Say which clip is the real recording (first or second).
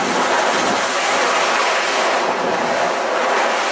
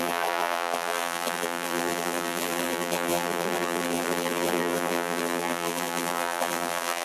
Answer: first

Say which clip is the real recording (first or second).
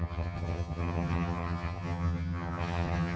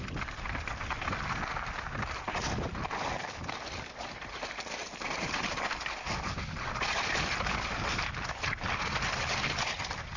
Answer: second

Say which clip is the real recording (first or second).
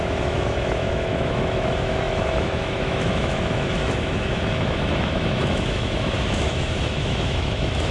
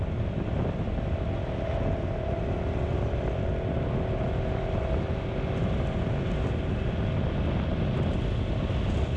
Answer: second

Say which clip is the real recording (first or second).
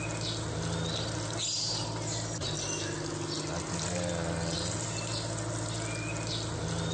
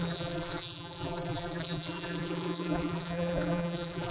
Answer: first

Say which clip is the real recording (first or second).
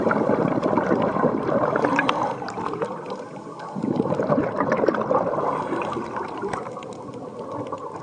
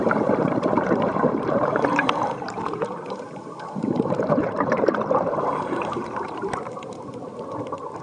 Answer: first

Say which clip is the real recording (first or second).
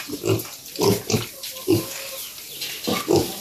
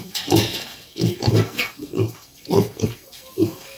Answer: first